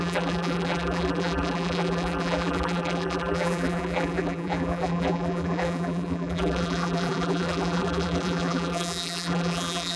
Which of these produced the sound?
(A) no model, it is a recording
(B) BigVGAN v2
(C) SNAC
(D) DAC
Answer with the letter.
B